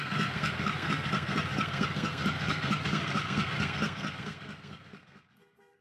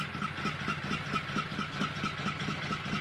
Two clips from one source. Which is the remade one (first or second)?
first